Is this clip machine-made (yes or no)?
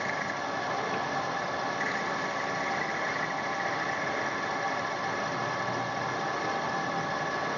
no